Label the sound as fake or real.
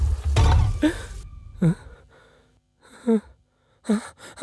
real